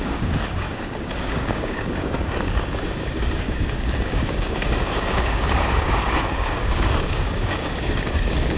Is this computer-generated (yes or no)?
yes